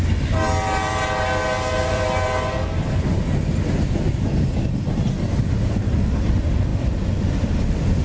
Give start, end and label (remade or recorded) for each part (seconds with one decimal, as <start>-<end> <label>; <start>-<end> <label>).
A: 0.0-8.0 recorded